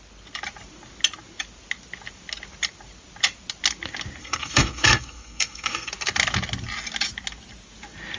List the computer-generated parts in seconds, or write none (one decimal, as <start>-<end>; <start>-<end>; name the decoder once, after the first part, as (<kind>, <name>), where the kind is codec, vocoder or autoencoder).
4.2-5.9 (codec, SNAC)